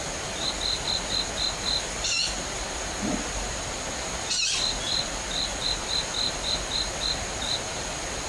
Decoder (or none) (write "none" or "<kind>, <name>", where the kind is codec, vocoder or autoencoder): none